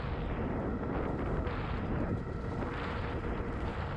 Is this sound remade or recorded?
recorded